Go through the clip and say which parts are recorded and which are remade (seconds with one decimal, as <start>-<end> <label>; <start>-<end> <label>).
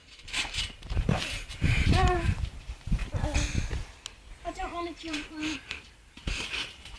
0.0-3.0 remade; 3.0-4.6 recorded; 4.6-7.0 remade